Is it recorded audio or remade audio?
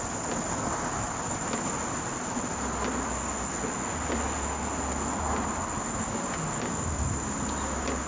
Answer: recorded